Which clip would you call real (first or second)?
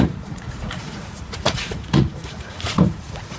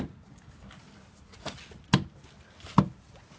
second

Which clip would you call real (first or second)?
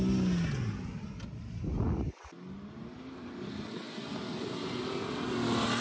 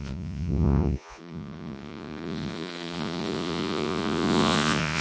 first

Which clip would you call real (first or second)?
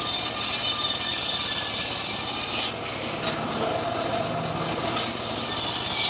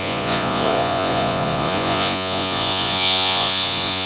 first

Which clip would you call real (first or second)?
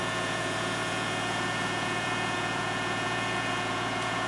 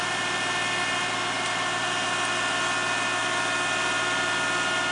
second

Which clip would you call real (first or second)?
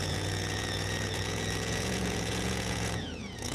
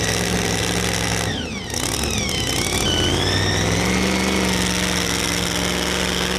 second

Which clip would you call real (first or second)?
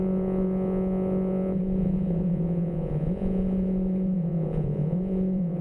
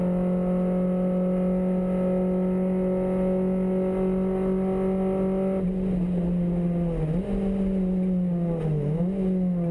second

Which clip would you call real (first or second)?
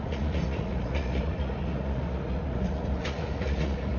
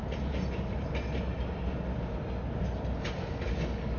second